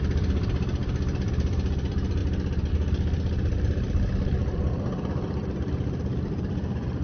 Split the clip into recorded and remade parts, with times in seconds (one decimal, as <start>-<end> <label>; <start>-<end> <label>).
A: 0.0-2.2 remade; 2.2-2.7 recorded; 2.7-7.0 remade